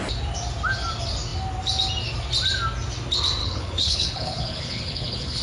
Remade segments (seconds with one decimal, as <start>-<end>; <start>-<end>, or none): 3.4-5.4